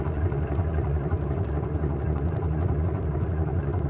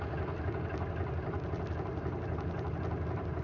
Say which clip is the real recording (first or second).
second